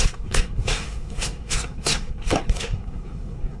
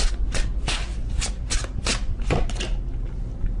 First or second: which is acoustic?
second